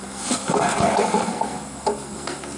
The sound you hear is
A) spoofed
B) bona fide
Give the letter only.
A